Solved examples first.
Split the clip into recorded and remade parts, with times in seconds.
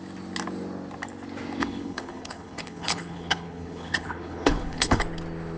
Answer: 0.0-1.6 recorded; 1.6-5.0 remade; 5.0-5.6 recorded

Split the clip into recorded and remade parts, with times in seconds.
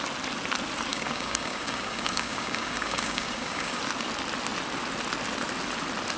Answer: 0.0-0.9 recorded; 0.9-3.8 remade; 3.8-6.2 recorded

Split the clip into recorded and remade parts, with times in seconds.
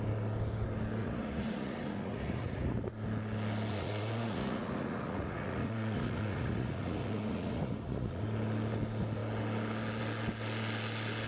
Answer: 0.0-1.0 recorded; 1.0-2.9 remade; 2.9-3.7 recorded; 3.7-8.2 remade; 8.2-11.3 recorded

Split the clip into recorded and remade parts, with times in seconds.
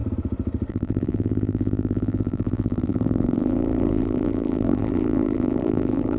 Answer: 0.0-0.7 recorded; 0.7-6.2 remade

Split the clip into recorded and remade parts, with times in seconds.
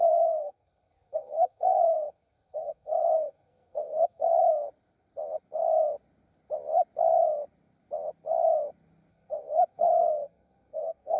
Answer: 0.0-4.3 remade; 4.3-9.1 recorded; 9.1-11.2 remade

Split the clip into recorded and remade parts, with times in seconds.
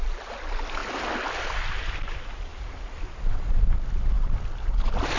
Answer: 0.0-5.2 recorded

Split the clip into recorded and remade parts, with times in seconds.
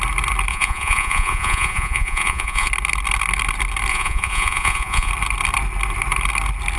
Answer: 0.0-0.5 recorded; 0.5-2.7 remade; 2.7-3.9 recorded; 3.9-5.1 remade; 5.1-6.8 recorded